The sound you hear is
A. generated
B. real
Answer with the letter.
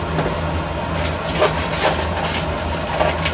B